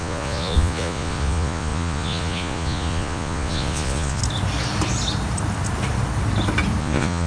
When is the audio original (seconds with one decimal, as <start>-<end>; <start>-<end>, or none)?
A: 4.2-6.8